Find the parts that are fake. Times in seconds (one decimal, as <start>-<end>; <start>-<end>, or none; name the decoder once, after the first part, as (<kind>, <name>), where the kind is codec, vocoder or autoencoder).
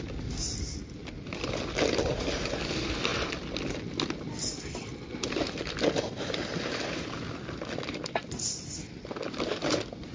none